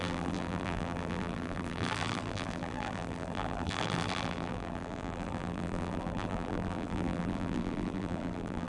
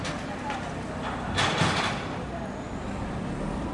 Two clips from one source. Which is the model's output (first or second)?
first